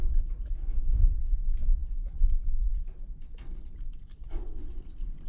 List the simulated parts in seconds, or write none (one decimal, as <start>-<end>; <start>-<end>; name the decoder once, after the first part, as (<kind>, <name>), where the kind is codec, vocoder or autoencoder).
none